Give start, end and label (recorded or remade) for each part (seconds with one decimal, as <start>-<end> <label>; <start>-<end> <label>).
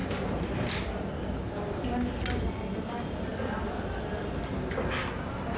0.0-5.6 recorded